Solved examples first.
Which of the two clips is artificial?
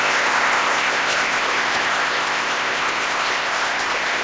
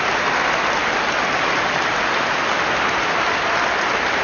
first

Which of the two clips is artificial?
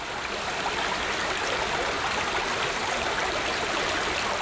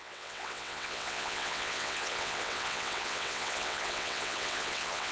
second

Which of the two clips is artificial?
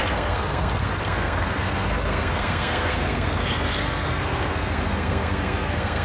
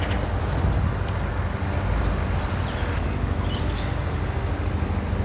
first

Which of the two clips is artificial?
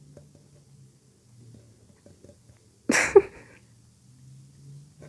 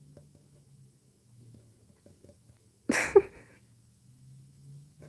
second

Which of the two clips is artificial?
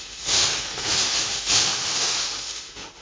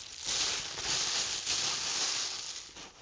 first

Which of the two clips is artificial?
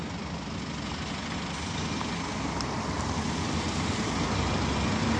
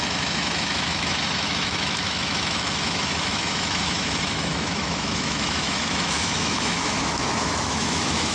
second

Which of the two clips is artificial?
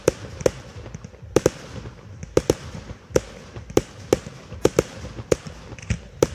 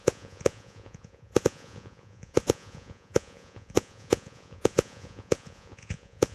second